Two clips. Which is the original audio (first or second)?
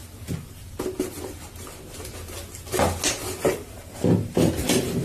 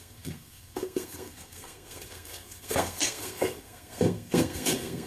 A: first